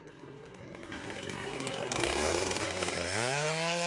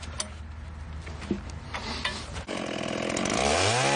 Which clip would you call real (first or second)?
second